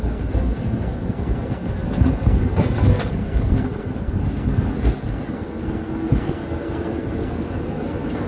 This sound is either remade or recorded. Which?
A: remade